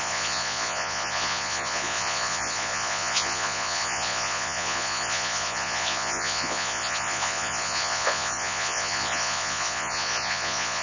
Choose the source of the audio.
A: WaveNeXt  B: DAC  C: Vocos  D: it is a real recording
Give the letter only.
C